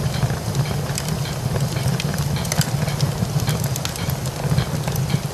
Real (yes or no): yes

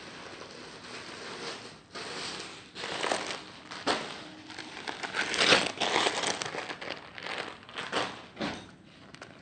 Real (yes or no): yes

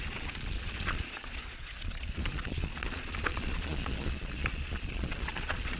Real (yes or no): no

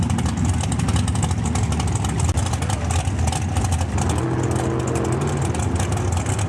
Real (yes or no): yes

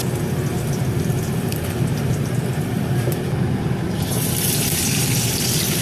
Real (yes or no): no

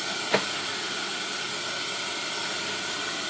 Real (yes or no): yes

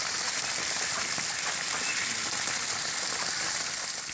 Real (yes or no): yes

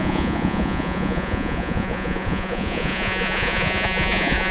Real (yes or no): no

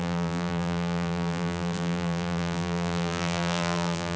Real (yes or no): no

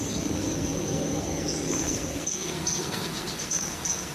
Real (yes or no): no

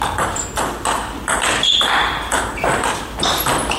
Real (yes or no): yes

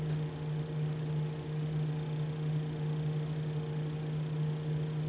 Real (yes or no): yes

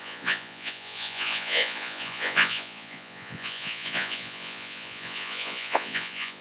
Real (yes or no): no